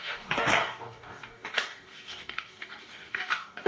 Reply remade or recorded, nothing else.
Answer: remade